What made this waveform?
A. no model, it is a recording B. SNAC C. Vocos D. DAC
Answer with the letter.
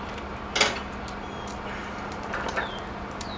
A